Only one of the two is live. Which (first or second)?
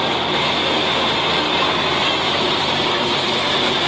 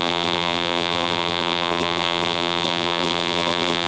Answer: first